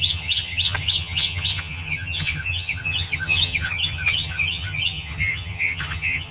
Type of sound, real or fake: fake